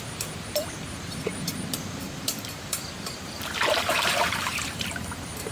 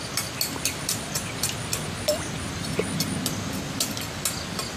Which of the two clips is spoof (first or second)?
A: first